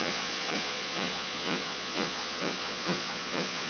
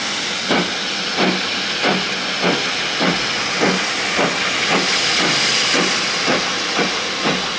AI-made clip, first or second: first